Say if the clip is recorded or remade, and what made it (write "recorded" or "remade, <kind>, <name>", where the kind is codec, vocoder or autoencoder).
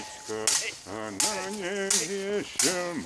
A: recorded